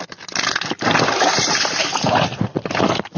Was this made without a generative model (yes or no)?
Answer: yes